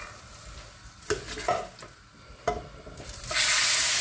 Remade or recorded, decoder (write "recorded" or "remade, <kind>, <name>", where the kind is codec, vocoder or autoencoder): recorded